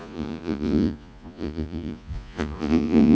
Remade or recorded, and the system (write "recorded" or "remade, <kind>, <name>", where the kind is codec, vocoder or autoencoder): remade, vocoder, Vocos